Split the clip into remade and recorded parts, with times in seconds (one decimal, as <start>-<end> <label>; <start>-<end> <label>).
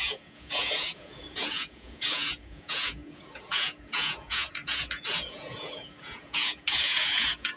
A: 0.0-7.6 remade